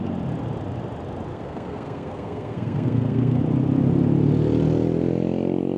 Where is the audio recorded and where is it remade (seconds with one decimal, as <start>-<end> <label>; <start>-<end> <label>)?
0.0-1.3 recorded; 1.3-3.4 remade; 3.4-5.8 recorded